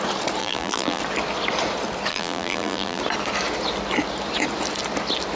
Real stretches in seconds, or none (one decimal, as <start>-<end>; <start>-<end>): 0.0-0.4; 1.0-2.1; 3.0-5.4